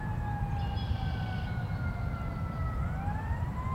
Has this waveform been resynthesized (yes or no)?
no